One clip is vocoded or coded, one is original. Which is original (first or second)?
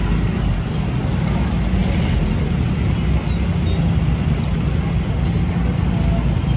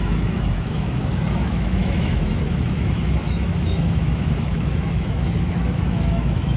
first